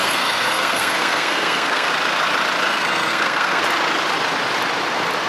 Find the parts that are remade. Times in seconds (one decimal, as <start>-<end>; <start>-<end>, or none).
0.0-1.9; 2.7-3.6